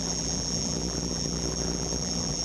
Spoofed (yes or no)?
yes